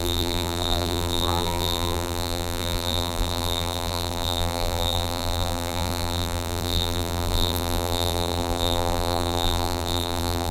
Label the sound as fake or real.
fake